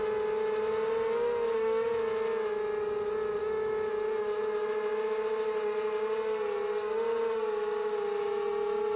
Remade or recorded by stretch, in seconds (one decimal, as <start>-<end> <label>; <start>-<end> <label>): 0.0-3.4 recorded; 3.4-3.9 remade; 3.9-9.0 recorded